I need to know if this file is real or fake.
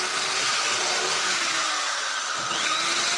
real